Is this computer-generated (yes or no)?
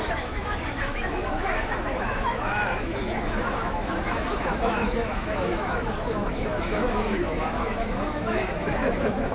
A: yes